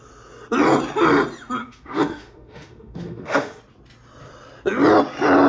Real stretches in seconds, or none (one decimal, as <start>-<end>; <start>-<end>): 0.0-1.6; 3.6-5.5